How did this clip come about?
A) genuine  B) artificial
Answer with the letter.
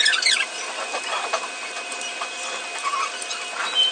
B